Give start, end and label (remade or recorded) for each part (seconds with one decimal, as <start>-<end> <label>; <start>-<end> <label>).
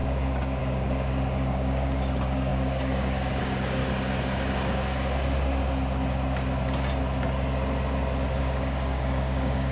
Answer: 0.0-3.8 remade; 3.8-8.4 recorded; 8.4-9.7 remade